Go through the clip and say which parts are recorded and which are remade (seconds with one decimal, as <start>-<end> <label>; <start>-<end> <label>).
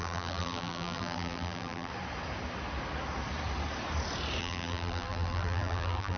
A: 0.0-1.9 remade; 1.9-4.4 recorded; 4.4-6.2 remade